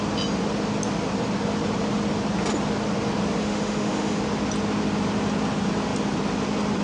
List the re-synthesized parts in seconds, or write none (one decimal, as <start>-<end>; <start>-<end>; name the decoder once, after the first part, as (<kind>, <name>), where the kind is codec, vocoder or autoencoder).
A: 3.4-4.2 (autoencoder, DAC-VAE)